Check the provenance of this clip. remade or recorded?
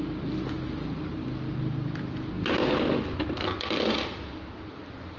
recorded